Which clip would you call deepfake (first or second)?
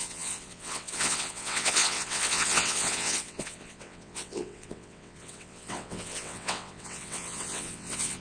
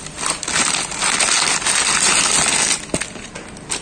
first